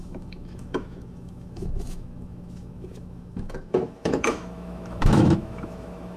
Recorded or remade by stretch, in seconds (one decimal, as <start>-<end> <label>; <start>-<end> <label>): 0.0-6.2 remade